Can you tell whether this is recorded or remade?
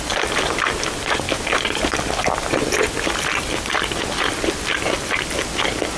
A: recorded